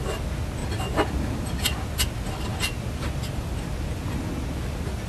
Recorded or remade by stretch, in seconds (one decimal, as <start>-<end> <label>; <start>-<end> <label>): 0.0-5.1 recorded